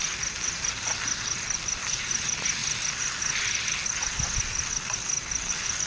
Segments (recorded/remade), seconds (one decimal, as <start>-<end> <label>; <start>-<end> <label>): 0.0-2.6 remade; 2.6-5.5 recorded; 5.5-5.9 remade